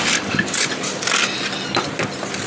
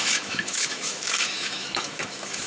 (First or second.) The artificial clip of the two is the second